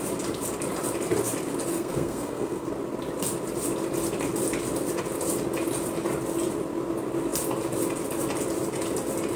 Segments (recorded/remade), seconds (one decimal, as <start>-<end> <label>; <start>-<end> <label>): 0.0-1.7 recorded; 1.7-2.7 remade; 2.7-9.4 recorded